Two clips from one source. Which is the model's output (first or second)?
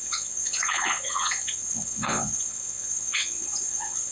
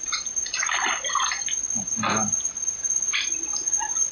first